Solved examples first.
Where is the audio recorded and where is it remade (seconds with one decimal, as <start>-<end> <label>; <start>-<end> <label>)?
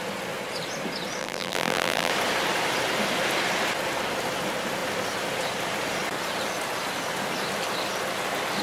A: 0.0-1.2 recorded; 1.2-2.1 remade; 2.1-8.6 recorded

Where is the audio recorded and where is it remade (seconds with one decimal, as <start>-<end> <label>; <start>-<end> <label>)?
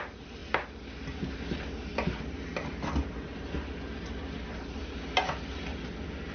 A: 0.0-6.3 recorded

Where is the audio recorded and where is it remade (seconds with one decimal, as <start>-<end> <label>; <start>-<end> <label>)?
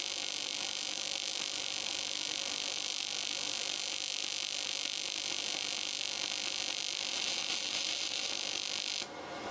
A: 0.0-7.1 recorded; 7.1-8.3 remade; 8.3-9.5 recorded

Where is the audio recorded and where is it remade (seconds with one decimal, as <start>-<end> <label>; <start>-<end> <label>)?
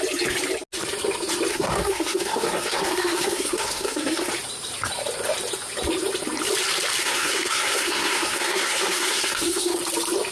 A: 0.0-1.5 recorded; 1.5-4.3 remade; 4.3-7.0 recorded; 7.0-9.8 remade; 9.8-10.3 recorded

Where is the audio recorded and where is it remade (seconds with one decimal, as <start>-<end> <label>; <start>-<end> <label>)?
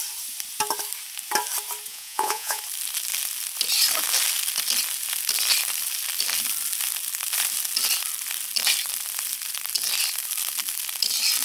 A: 0.0-1.9 recorded; 1.9-2.6 remade; 2.6-11.4 recorded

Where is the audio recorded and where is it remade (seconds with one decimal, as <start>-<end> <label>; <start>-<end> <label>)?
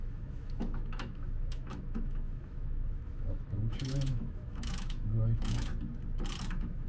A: 0.0-5.7 remade; 5.7-6.4 recorded; 6.4-6.9 remade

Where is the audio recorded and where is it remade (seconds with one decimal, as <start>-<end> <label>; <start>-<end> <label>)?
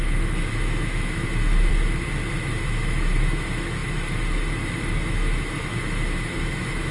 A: 0.0-1.7 remade; 1.7-2.3 recorded; 2.3-6.9 remade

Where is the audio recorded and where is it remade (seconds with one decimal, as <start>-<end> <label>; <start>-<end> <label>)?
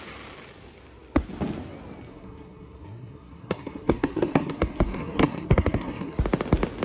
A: 0.0-2.1 recorded; 2.1-6.2 remade; 6.2-6.8 recorded